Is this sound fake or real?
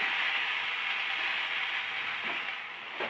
real